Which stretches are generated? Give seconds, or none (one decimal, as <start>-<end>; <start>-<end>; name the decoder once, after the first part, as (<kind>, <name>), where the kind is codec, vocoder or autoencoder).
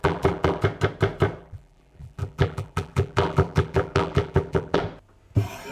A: 0.0-0.6 (vocoder, BigVGAN v2); 1.4-4.8